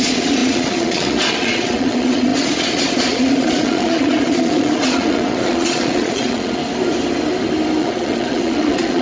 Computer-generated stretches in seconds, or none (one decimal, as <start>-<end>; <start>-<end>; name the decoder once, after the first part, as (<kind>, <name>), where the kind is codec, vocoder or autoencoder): 0.0-6.6 (vocoder, Vocos); 7.8-9.0